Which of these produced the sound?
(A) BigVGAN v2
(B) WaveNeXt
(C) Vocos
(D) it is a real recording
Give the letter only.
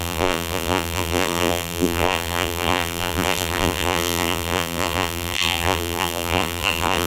A